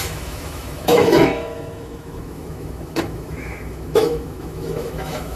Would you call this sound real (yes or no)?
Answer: no